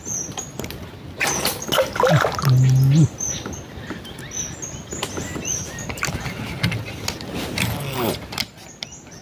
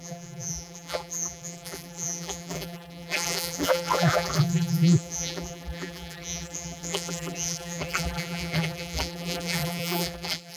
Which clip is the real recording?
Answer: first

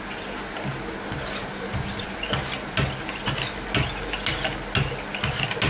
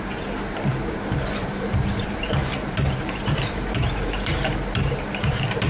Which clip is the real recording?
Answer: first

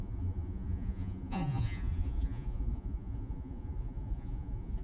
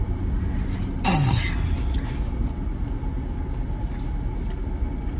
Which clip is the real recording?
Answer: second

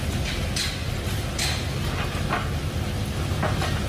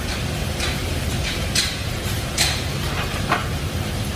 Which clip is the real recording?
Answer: first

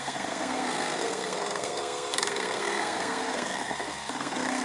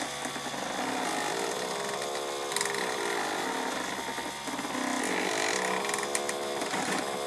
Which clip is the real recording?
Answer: second